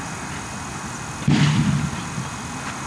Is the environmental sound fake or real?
real